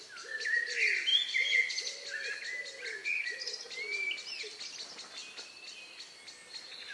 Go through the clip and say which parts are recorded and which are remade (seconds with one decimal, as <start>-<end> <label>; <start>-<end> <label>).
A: 0.0-6.9 recorded